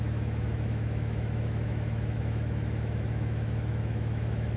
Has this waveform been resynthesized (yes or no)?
yes